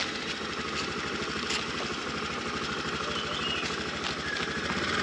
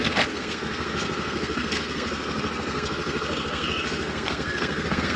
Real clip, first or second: first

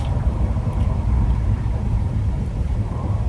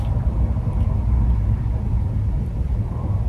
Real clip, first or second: second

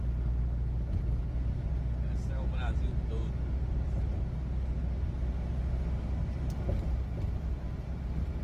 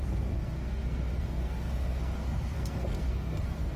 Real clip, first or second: first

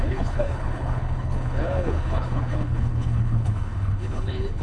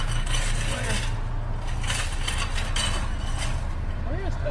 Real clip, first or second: second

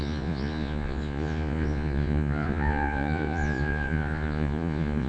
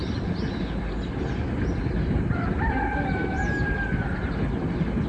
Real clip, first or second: second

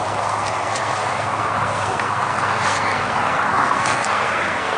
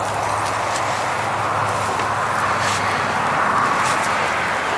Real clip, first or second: second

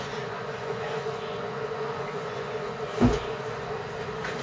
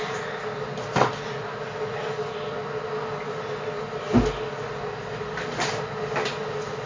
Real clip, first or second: second